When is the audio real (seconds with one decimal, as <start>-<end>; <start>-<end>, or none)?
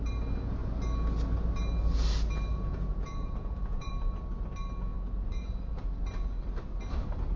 0.0-2.5; 3.9-5.3; 5.8-7.4